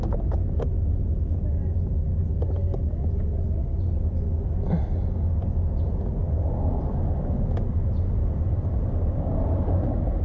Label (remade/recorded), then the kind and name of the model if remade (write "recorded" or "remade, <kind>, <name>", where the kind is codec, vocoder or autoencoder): recorded